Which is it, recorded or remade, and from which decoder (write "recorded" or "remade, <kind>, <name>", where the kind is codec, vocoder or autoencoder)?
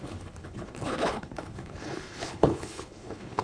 remade, codec, HILCodec